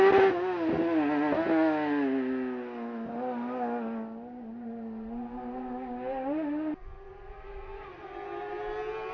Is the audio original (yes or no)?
yes